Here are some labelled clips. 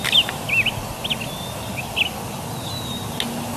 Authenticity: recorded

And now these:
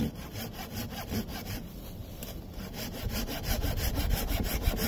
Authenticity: recorded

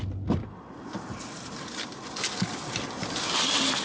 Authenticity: recorded